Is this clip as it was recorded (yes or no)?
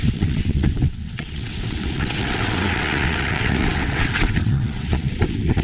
no